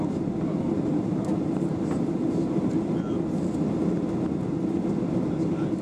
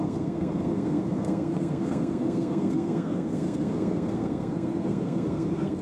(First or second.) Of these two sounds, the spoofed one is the second